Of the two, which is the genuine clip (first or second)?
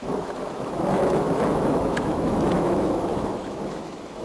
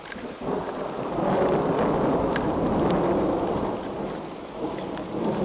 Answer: second